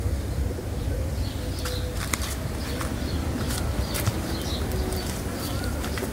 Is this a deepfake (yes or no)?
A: no